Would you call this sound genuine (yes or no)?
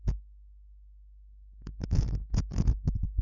no